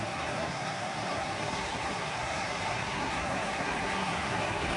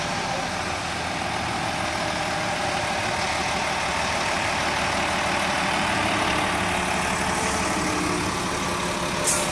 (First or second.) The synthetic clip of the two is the first